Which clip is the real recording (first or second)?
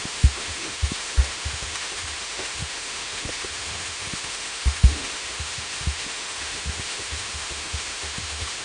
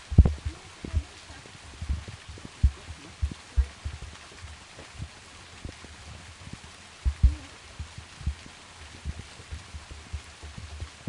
second